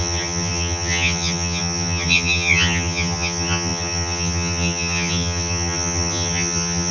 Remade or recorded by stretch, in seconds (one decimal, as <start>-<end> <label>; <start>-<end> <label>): 0.0-6.9 remade